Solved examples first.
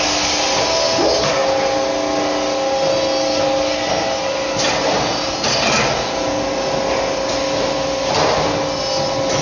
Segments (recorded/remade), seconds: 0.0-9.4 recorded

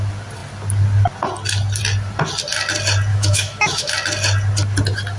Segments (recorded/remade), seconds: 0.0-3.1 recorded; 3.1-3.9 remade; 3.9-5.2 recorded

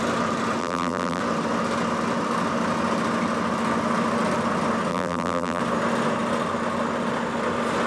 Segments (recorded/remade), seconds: 0.0-0.6 recorded; 0.6-1.2 remade; 1.2-4.9 recorded; 4.9-5.6 remade; 5.6-7.9 recorded

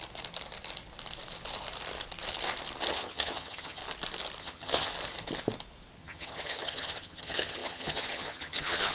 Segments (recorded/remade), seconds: 0.0-2.9 recorded; 2.9-3.8 remade; 3.8-4.4 recorded; 4.4-4.9 remade; 4.9-6.0 recorded; 6.0-8.9 remade